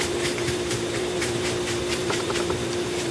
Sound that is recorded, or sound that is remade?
remade